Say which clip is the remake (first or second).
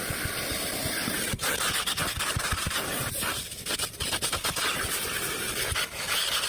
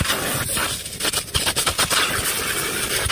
first